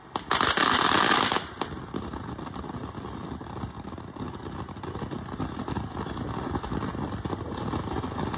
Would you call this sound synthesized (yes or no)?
no